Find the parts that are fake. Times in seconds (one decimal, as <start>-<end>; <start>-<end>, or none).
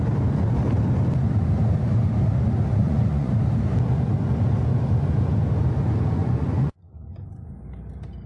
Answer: 2.8-3.3; 6.2-7.1